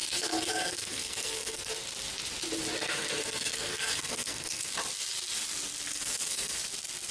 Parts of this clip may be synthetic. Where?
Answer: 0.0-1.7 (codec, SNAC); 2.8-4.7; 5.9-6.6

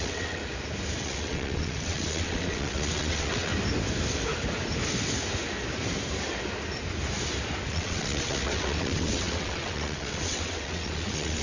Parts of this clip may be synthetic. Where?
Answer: 0.0-0.4 (vocoder, WaveNeXt); 1.0-3.5; 7.7-11.4

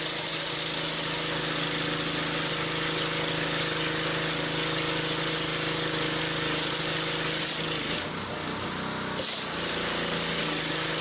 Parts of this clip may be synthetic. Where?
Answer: none

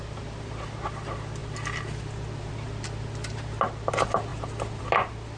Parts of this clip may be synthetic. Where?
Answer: 1.4-2.5 (vocoder, BigVGAN v2)

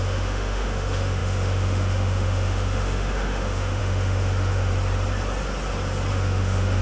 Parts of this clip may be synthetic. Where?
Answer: 0.0-4.7 (autoencoder, DAC-VAE); 6.1-6.8

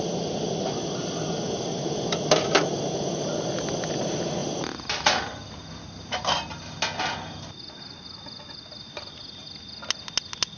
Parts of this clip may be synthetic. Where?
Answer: none

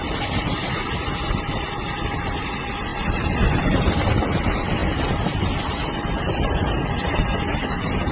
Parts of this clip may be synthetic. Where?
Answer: 0.0-0.6 (vocoder, BigVGAN v2); 2.9-4.2